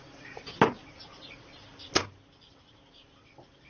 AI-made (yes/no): no